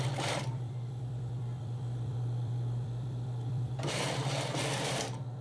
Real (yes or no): no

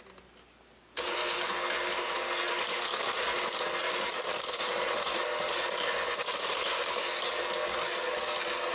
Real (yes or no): yes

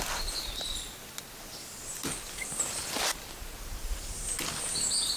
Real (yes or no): yes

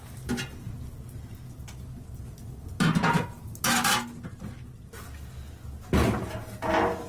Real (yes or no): yes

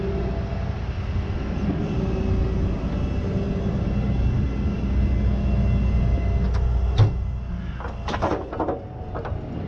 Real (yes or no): yes